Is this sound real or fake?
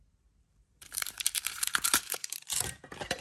fake